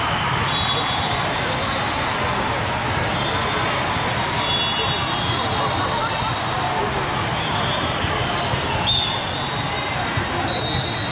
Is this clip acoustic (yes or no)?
yes